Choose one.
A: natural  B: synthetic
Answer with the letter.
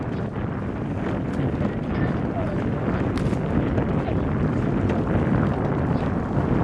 A